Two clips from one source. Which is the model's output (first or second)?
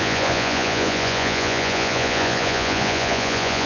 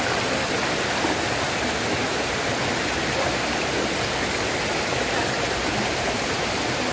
first